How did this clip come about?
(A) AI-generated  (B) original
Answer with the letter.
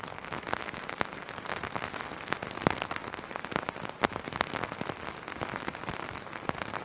B